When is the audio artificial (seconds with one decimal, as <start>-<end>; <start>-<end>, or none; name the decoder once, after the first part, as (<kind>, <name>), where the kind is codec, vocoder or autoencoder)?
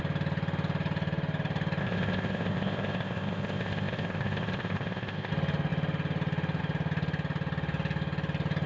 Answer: 1.8-5.3 (codec, ZipCodec)